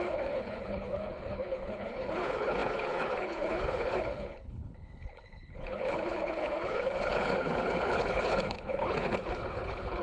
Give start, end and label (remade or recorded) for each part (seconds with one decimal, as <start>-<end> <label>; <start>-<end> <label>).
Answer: 0.0-10.0 remade